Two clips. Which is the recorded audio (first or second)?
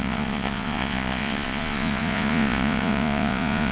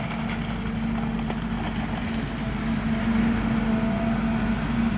second